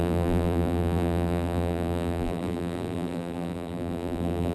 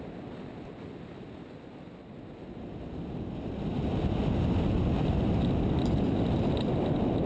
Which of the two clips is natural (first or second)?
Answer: second